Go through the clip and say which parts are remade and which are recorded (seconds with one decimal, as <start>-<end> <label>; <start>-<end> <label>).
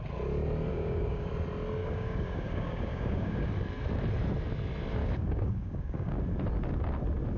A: 0.0-0.7 recorded; 0.7-1.3 remade; 1.3-1.8 recorded; 1.8-3.5 remade; 3.5-5.0 recorded; 5.0-6.2 remade; 6.2-7.4 recorded